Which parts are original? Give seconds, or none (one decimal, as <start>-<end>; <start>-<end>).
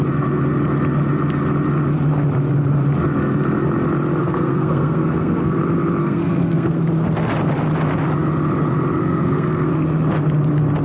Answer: 0.0-4.2; 5.6-6.0; 6.8-9.0; 9.7-10.8